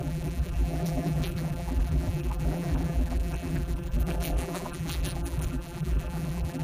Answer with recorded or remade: remade